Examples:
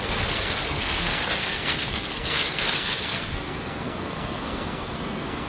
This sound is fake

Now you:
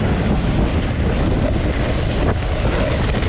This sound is real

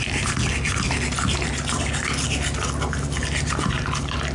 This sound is real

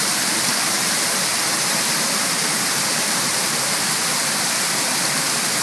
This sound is fake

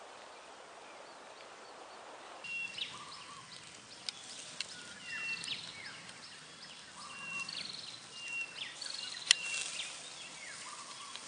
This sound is real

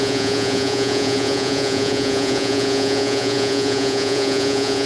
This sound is fake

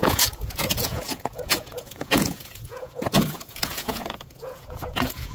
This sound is fake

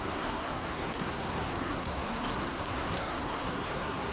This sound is fake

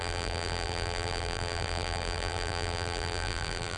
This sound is fake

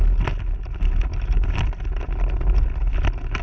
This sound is real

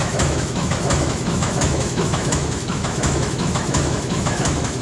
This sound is fake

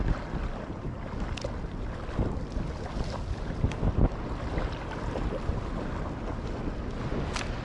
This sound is real